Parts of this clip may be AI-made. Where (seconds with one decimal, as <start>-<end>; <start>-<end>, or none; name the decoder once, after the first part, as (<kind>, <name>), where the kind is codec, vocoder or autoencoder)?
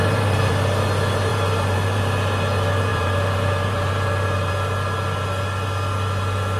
0.0-0.5 (vocoder, BigVGAN v2); 1.3-2.0; 2.9-4.5